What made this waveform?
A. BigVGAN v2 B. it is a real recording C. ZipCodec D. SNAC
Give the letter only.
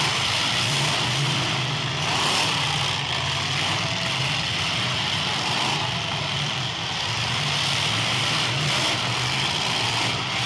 A